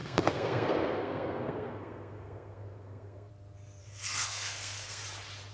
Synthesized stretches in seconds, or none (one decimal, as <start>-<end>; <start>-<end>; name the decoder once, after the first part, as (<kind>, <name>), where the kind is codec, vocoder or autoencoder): 0.0-3.3 (codec, SNAC); 3.8-5.0